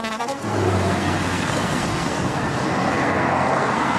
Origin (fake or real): fake